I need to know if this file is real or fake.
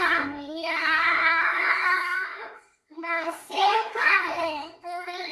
fake